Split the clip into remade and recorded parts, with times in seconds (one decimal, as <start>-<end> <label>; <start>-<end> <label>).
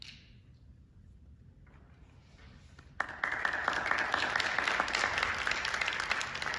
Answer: 0.0-6.6 recorded